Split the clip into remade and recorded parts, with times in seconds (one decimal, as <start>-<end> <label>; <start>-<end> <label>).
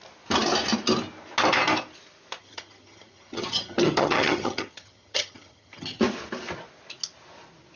0.0-2.4 recorded; 2.4-6.0 remade; 6.0-7.8 recorded